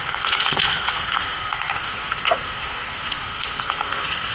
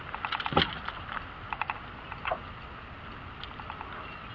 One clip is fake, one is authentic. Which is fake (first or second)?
first